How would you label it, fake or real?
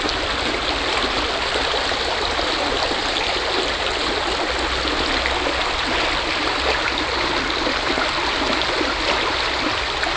real